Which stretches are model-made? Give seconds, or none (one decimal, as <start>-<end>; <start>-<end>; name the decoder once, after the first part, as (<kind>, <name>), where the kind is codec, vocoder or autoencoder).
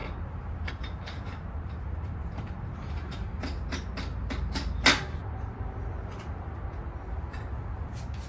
none